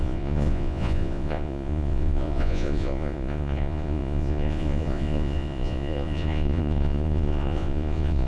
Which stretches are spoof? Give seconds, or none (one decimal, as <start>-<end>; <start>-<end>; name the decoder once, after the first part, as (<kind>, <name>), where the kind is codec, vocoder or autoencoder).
0.0-8.3 (vocoder, Vocos)